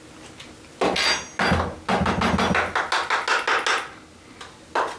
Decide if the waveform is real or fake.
real